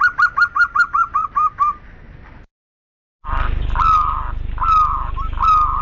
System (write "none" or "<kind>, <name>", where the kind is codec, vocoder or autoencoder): none